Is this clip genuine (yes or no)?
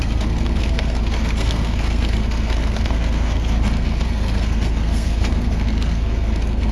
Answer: no